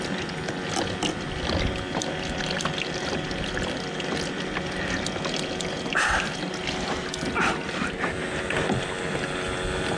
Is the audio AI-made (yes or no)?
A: no